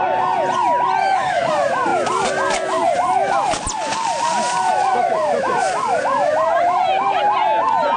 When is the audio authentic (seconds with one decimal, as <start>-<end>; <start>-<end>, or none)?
0.0-1.0; 1.5-8.0